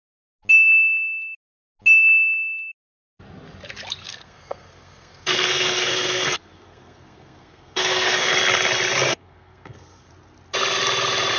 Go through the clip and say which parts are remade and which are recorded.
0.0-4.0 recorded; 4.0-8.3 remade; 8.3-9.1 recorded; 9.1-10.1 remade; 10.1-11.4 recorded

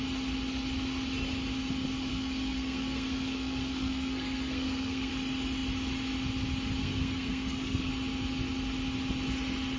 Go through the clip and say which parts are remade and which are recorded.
0.0-2.1 recorded; 2.1-5.1 remade; 5.1-6.8 recorded; 6.8-7.9 remade; 7.9-9.8 recorded

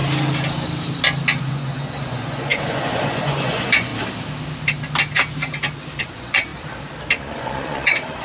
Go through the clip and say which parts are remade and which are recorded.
0.0-1.4 recorded; 1.4-3.9 remade; 3.9-6.0 recorded; 6.0-6.5 remade; 6.5-7.2 recorded; 7.2-8.2 remade

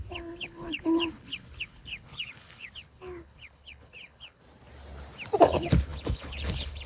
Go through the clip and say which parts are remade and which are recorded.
0.0-4.4 remade; 4.4-5.4 recorded; 5.4-6.9 remade

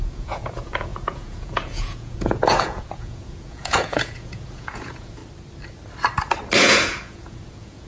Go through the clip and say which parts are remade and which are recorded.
0.0-5.2 remade; 5.2-6.6 recorded; 6.6-7.9 remade

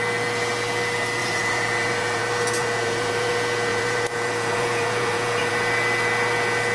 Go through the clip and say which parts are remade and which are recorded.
0.0-1.2 recorded; 1.2-2.2 remade; 2.2-2.6 recorded; 2.6-3.3 remade; 3.3-3.7 recorded; 3.7-5.5 remade; 5.5-6.7 recorded